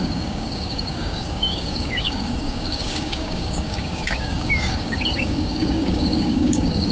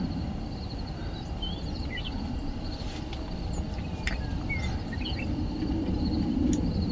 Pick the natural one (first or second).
second